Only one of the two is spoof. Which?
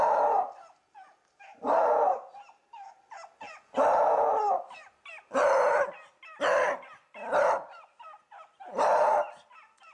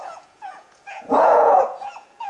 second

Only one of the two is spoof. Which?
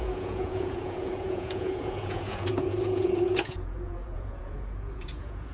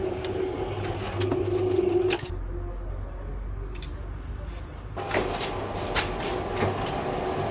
first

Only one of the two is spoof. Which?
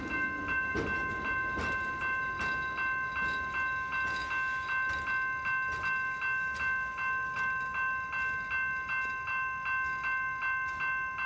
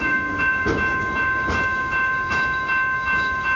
second